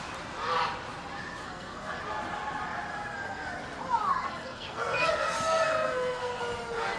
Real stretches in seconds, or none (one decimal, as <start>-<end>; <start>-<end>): 0.0-1.4; 2.0-2.9; 3.5-4.1; 6.4-7.0